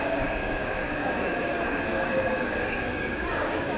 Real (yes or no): no